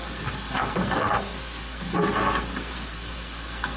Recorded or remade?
remade